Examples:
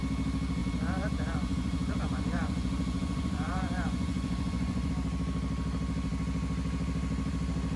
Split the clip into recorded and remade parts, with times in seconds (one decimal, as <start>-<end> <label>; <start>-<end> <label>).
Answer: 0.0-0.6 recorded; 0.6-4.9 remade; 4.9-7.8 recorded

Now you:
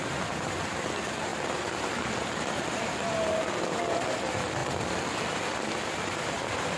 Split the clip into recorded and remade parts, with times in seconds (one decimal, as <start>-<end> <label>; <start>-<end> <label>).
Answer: 0.0-6.8 recorded

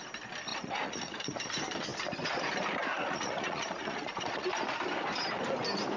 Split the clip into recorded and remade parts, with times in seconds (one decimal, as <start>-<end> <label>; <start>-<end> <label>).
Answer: 0.0-0.5 recorded; 0.5-1.4 remade; 1.4-2.9 recorded; 2.9-4.5 remade; 4.5-6.0 recorded

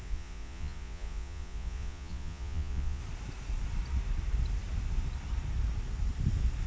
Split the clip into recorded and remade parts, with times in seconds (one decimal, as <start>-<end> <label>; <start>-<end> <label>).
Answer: 0.0-3.0 remade; 3.0-6.7 recorded

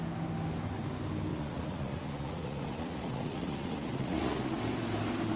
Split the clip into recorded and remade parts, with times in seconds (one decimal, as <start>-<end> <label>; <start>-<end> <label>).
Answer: 0.0-1.3 recorded; 1.3-4.5 remade; 4.5-5.4 recorded

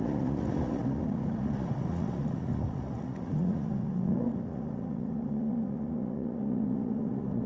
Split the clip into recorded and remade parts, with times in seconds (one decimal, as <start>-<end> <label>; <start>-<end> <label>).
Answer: 0.0-7.5 remade